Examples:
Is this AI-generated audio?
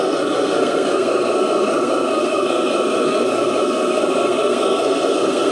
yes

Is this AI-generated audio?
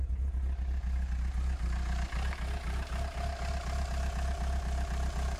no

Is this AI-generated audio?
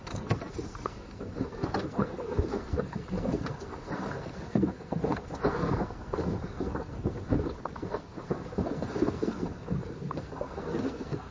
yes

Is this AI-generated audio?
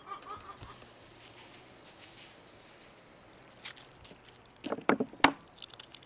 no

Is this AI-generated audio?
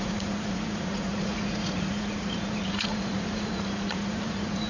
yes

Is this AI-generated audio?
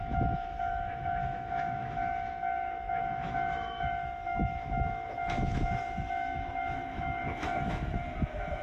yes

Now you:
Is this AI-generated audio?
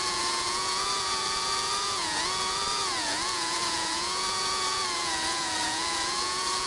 yes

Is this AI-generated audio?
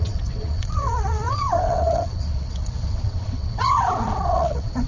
yes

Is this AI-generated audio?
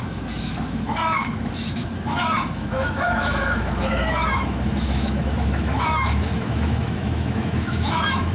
yes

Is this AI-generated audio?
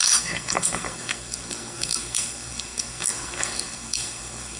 yes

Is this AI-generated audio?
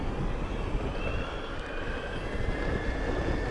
no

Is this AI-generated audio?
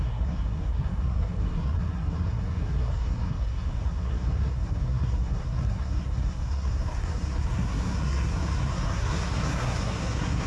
yes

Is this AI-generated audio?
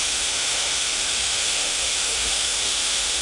yes